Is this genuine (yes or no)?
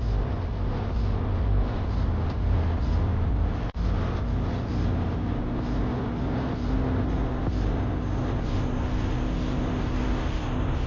yes